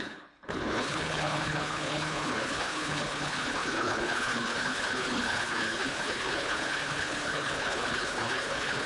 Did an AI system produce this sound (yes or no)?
yes